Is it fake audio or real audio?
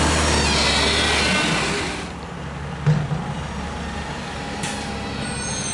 real